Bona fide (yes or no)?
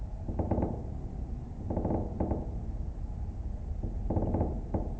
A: yes